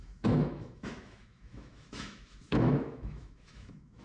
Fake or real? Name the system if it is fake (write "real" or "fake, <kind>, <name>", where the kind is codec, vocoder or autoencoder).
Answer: fake, autoencoder, DAC-VAE